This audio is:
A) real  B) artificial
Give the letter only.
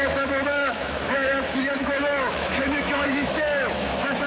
B